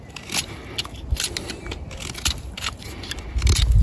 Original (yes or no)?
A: yes